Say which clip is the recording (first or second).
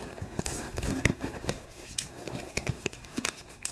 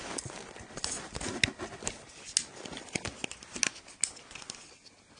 second